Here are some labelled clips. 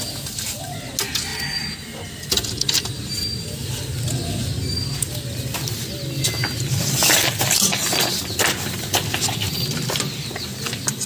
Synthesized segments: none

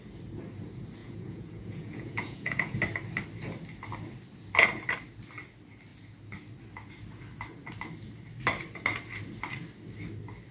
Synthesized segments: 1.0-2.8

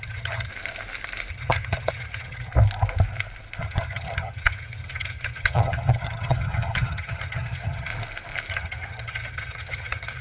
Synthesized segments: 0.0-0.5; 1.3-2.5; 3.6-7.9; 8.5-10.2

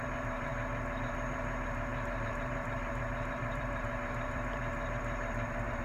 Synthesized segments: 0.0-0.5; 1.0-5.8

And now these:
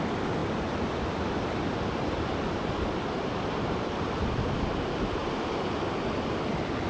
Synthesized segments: 0.4-4.1; 5.2-5.8

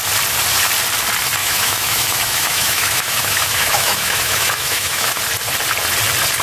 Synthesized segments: 1.4-5.2

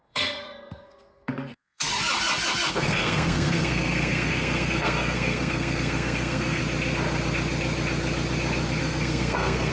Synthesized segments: 0.0-1.9; 2.7-6.6; 8.8-9.7

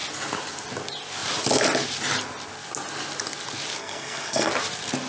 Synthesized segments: 3.8-4.5